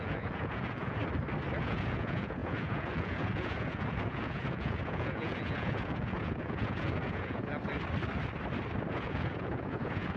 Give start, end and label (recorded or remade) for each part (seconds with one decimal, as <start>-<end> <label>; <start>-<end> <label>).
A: 0.0-1.0 remade; 1.0-1.6 recorded; 1.6-7.5 remade; 7.5-8.9 recorded; 8.9-10.2 remade